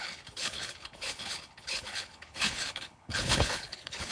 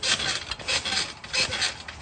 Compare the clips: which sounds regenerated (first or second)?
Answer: first